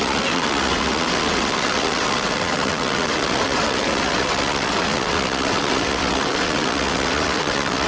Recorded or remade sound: remade